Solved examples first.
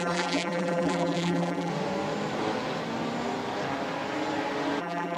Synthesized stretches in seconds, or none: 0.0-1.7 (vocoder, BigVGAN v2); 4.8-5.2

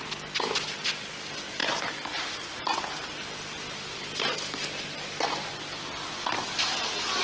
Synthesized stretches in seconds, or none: none

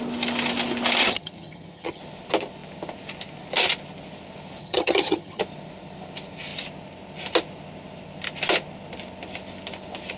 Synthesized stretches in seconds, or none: 1.0-2.0 (vocoder, HiFi-GAN); 4.6-5.4